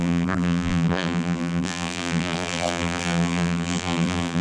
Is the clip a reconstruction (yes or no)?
yes